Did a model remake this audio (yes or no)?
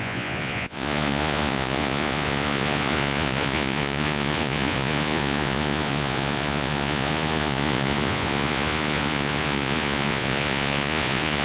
yes